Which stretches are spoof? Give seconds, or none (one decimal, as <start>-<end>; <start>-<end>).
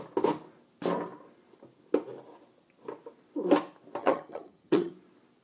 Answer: 4.0-4.9